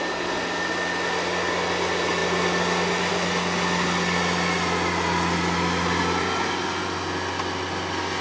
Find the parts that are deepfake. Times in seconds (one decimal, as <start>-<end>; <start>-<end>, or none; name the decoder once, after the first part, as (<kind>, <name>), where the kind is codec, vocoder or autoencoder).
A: none